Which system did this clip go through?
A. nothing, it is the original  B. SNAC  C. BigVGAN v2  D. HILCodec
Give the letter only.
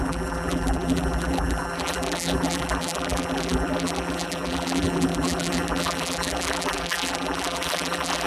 C